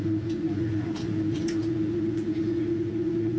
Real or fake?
fake